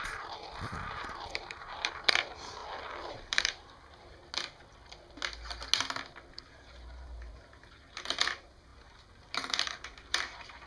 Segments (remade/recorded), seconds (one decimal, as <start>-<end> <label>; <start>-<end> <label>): 0.0-2.6 remade; 2.6-3.1 recorded; 3.1-4.2 remade; 4.2-6.3 recorded; 6.3-10.7 remade